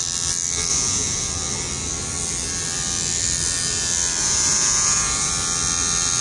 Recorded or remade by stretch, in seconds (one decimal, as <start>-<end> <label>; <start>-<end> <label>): 0.0-0.7 recorded; 0.7-1.3 remade; 1.3-4.2 recorded; 4.2-5.3 remade; 5.3-6.2 recorded